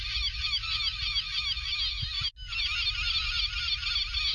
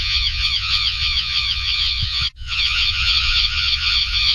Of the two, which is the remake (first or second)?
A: second